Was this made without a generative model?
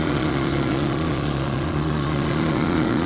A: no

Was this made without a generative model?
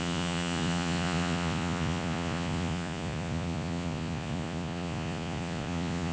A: no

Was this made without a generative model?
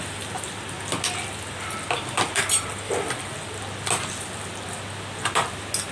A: yes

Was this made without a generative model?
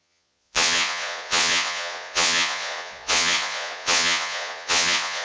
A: no